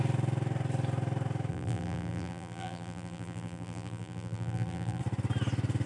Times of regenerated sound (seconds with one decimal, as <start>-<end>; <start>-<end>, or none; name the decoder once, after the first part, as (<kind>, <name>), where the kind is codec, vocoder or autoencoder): 1.5-5.0 (vocoder, BigVGAN v2)